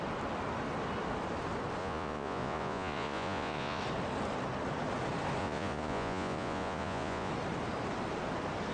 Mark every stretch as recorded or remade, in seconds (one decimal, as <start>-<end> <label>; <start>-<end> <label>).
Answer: 0.0-1.8 recorded; 1.8-3.8 remade; 3.8-5.4 recorded; 5.4-7.3 remade; 7.3-8.7 recorded